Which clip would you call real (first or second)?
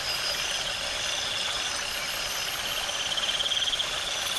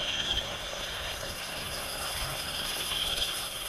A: first